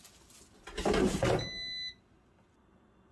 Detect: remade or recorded recorded